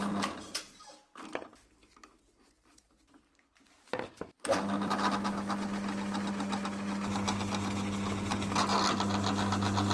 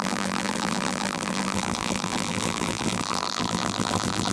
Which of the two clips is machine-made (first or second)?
second